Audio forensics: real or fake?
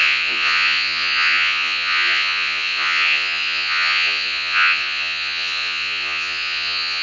fake